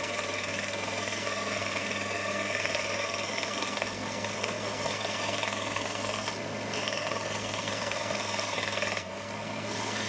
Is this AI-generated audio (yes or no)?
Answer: yes